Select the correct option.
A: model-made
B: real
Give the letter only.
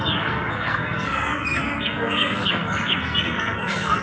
A